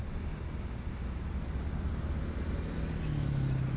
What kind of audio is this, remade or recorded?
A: recorded